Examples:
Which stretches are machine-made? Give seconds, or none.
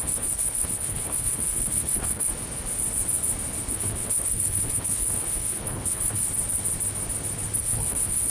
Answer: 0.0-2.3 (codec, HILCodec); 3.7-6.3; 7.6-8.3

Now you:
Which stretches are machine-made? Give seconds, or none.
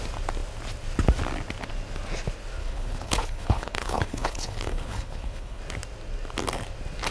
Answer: 2.6-5.6 (codec, HILCodec)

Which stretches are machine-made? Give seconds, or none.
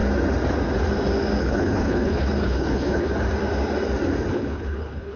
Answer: 1.4-3.1 (codec, HILCodec); 4.3-5.2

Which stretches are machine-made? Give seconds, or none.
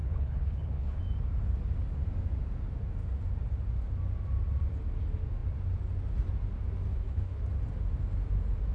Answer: 0.0-1.0 (codec, HILCodec); 6.9-7.4